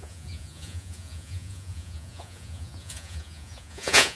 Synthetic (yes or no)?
yes